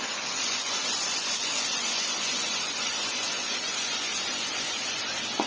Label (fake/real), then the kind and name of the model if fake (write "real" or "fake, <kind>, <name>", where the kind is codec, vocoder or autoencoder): fake, vocoder, Vocos